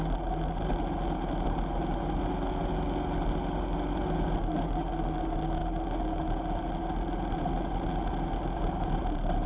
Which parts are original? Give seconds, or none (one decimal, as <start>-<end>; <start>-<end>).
0.0-9.5